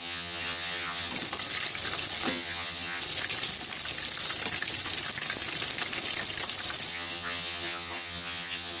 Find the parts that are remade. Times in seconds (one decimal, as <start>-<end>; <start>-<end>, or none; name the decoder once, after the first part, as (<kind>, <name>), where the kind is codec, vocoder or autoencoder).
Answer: 0.0-1.1 (vocoder, HiFi-GAN); 2.3-3.0; 6.9-8.8